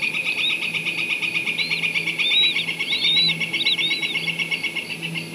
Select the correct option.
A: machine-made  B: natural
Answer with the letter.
B